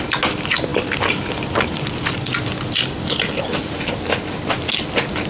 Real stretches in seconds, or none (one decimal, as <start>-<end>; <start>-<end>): 0.0-0.7; 3.9-5.3